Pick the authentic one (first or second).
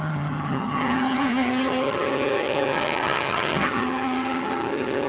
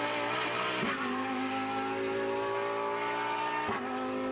second